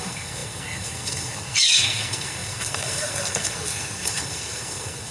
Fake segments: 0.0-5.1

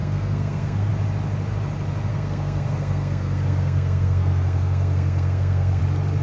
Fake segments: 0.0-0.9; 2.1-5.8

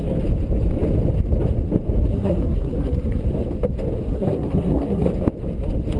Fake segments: 2.1-3.2; 4.1-5.1

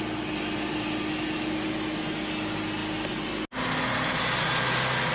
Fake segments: none